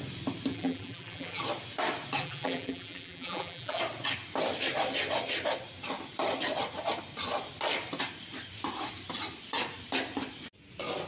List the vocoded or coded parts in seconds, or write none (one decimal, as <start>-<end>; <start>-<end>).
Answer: 0.5-1.4; 2.2-3.8